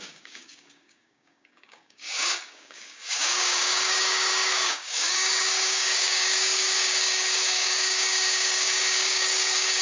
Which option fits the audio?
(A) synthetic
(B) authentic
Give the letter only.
A